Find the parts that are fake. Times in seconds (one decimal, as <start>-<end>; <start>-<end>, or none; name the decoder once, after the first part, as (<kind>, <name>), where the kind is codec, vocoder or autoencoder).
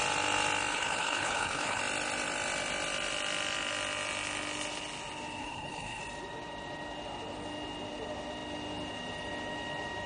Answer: 0.7-1.8 (codec, HILCodec); 5.4-6.0